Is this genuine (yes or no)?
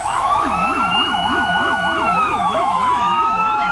no